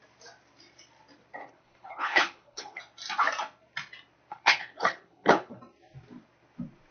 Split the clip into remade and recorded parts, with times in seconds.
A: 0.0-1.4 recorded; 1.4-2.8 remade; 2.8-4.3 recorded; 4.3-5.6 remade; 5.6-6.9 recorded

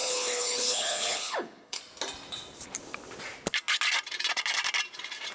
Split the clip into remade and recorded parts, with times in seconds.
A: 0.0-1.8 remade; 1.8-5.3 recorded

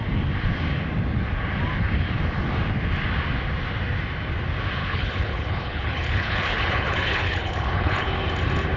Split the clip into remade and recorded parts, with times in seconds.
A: 0.0-4.8 recorded; 4.8-8.1 remade; 8.1-8.8 recorded

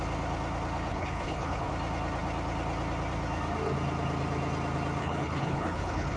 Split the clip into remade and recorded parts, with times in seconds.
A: 0.0-0.9 recorded; 0.9-1.7 remade; 1.7-5.0 recorded; 5.0-6.2 remade